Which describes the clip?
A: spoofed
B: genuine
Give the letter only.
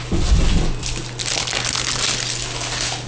B